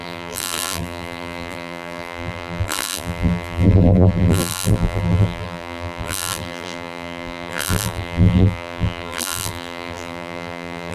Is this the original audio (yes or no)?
no